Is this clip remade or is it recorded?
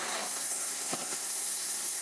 remade